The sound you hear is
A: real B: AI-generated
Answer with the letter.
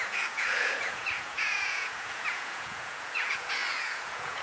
B